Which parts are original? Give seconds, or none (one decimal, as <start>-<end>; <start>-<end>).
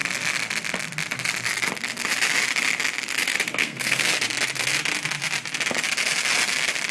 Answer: 0.0-3.6; 4.1-6.9